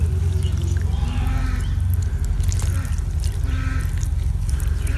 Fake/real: real